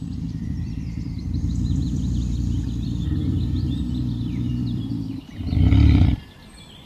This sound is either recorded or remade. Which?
remade